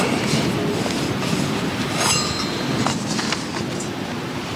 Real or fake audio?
fake